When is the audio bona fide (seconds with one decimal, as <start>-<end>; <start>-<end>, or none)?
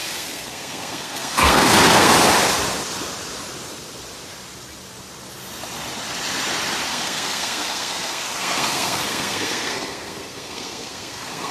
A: 2.1-6.9